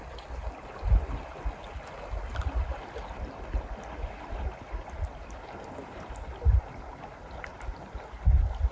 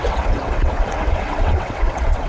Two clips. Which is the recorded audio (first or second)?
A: first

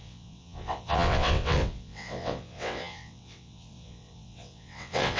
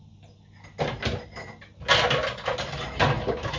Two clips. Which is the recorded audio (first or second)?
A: second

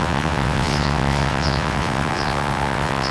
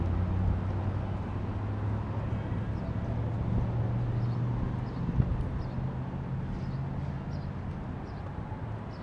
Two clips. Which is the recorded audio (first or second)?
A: second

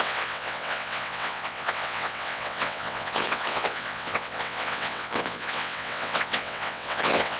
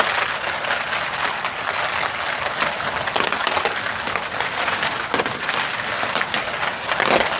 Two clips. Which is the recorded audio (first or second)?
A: second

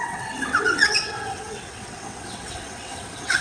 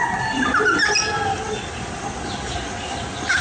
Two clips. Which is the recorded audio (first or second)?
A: second